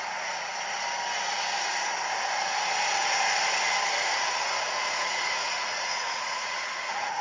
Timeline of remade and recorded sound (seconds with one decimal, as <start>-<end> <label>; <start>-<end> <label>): 0.0-0.5 remade; 0.5-4.7 recorded; 4.7-7.2 remade